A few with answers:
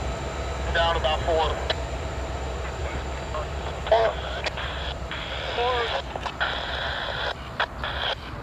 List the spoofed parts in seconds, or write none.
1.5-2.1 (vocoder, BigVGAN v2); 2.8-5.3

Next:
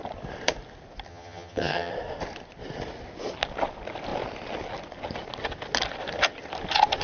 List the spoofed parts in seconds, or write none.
1.1-1.9 (vocoder, HiFi-GAN)

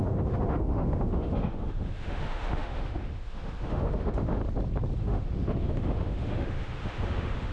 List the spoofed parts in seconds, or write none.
0.0-4.4 (autoencoder, DAC-VAE); 5.0-7.5

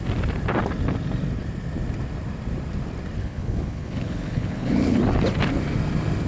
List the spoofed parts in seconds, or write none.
3.2-5.0 (codec, HILCodec)

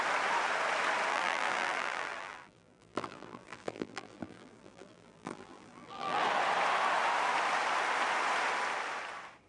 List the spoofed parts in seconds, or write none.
1.1-6.2 (vocoder, BigVGAN v2)

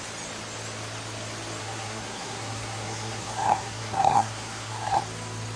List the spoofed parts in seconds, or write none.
1.6-5.0 (codec, SNAC)

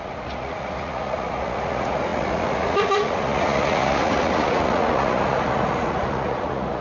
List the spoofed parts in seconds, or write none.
0.0-6.8 (vocoder, Vocos)

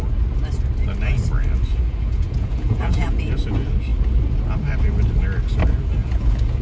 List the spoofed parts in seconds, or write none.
1.7-3.2 (vocoder, Vocos); 6.0-6.6